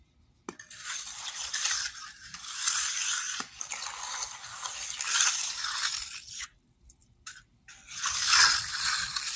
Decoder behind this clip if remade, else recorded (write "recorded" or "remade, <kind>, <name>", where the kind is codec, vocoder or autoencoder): recorded